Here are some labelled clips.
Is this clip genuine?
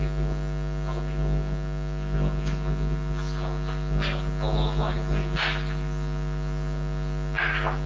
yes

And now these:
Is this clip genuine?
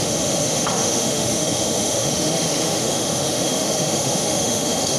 no